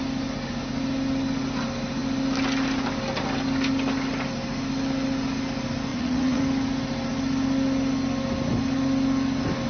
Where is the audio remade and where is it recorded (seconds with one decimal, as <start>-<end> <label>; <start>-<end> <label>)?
0.0-5.9 recorded; 5.9-6.4 remade; 6.4-9.7 recorded

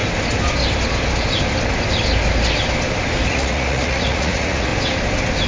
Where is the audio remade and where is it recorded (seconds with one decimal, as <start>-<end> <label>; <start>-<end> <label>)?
0.0-3.3 recorded; 3.3-4.7 remade; 4.7-5.5 recorded

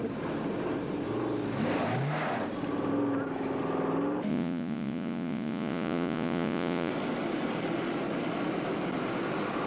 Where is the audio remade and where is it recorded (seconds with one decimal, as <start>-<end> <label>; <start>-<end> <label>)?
0.0-4.3 recorded; 4.3-6.9 remade; 6.9-9.7 recorded

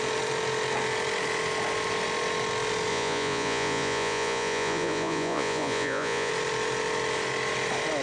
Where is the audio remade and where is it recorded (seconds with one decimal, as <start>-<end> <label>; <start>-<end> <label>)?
0.0-2.9 recorded; 2.9-6.3 remade; 6.3-8.0 recorded

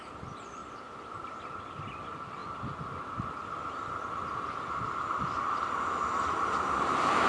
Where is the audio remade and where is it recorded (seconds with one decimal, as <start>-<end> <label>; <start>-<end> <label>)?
0.0-7.3 recorded

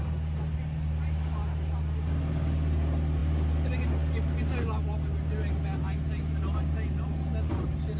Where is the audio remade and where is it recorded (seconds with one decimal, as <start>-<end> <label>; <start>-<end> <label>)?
0.0-8.0 recorded

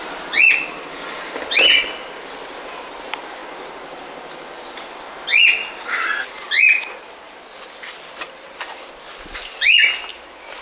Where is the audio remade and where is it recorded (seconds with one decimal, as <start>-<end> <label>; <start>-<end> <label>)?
0.0-10.6 recorded